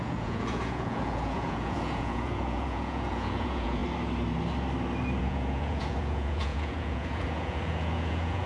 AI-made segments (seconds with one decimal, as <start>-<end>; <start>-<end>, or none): 0.0-3.8; 5.2-8.5